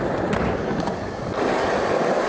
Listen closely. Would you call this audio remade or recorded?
recorded